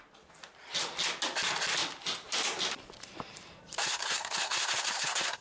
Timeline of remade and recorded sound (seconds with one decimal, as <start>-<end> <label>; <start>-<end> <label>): 0.0-3.8 recorded; 3.8-5.4 remade

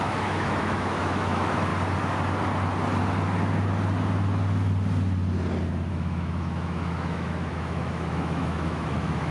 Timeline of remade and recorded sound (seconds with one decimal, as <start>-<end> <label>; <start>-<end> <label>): 0.0-1.7 remade; 1.7-5.9 recorded; 5.9-9.3 remade

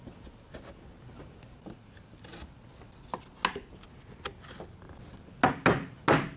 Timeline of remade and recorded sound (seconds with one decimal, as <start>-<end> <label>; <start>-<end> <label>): 0.0-6.4 recorded